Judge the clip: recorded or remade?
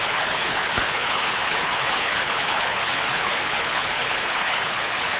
remade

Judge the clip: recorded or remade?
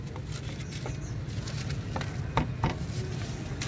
recorded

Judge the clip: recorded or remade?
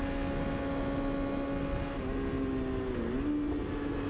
recorded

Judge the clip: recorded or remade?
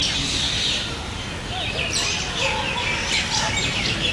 recorded